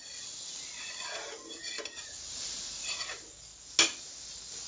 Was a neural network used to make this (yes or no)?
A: no